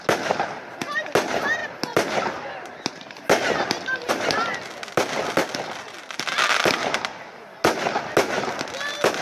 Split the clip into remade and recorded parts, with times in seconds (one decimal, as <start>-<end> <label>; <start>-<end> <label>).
0.0-5.4 recorded; 5.4-6.2 remade; 6.2-9.2 recorded